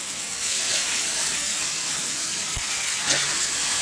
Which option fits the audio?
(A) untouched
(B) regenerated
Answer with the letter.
B